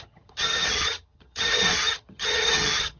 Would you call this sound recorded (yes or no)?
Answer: no